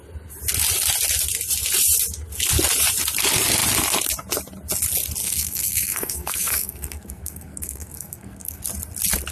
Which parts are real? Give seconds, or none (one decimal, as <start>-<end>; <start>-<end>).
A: 0.0-5.2; 8.6-9.3